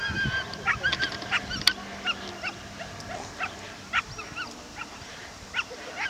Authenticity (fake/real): real